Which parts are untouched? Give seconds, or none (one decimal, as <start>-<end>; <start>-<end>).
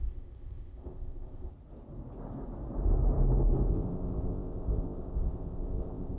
1.5-3.7